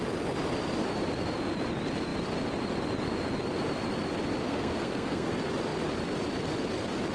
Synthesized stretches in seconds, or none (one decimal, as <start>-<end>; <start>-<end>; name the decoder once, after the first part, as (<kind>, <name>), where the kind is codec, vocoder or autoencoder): 4.4-5.3 (codec, SNAC)